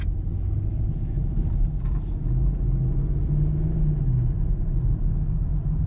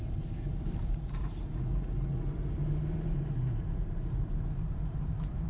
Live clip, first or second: first